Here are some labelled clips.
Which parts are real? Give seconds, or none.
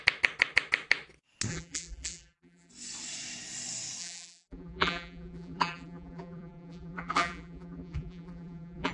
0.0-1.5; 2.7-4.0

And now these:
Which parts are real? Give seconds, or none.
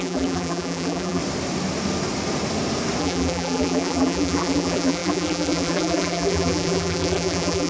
1.2-3.0